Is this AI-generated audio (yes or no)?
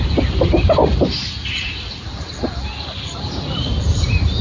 yes